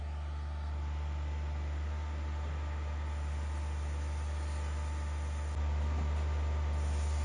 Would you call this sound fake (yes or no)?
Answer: no